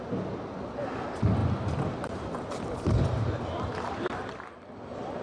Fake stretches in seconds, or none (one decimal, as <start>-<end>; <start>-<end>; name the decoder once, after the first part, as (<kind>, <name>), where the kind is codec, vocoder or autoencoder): none